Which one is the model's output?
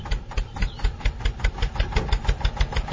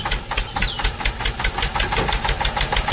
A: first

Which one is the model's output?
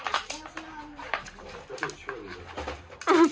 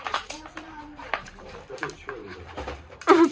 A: second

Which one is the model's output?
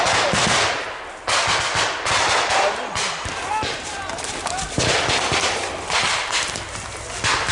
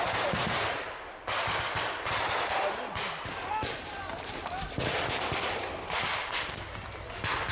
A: second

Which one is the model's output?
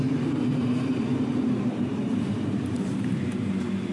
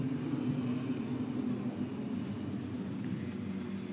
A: first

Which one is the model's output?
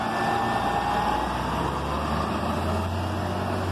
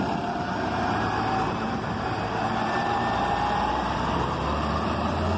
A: second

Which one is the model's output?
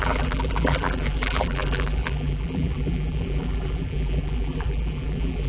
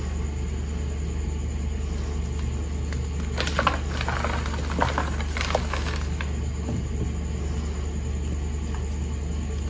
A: first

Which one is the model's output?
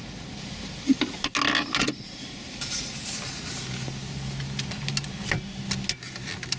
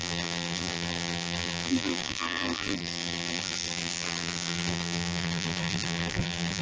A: second